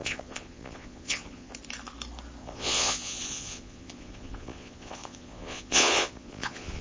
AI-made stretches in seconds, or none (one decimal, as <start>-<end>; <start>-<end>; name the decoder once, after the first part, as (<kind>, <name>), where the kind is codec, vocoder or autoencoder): 0.0-1.5 (vocoder, Vocos); 2.4-6.8